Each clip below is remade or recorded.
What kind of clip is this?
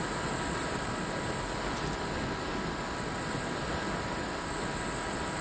recorded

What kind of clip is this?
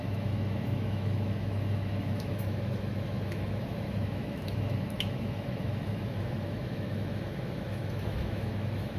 remade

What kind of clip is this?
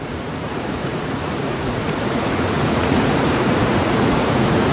remade